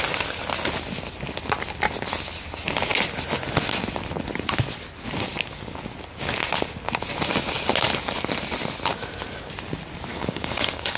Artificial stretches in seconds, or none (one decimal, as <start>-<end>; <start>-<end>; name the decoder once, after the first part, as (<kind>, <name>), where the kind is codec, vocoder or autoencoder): 10.1-11.0 (codec, DAC)